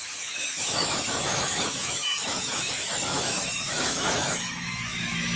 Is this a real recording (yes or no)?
no